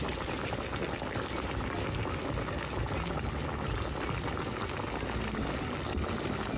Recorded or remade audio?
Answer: recorded